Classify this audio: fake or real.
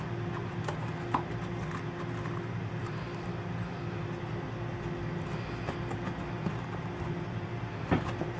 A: real